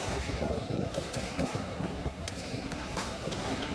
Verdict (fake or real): fake